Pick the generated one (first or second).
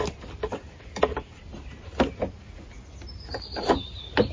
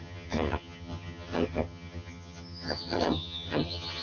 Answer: second